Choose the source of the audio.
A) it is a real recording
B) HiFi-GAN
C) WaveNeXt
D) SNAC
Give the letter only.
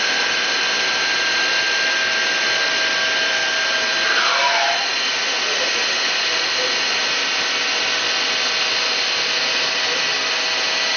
A